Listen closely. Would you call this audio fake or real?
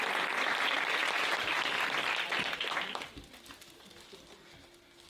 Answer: real